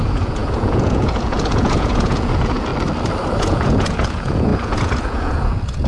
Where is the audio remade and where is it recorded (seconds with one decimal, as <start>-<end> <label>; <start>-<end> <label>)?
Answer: 0.0-2.7 remade; 2.7-3.4 recorded; 3.4-5.9 remade